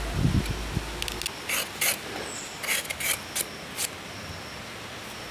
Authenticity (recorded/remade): recorded